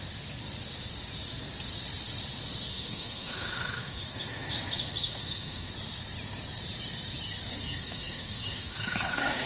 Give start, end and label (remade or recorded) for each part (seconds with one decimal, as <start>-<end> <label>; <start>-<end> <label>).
0.0-2.7 recorded; 2.7-5.7 remade; 5.7-7.6 recorded; 7.6-9.5 remade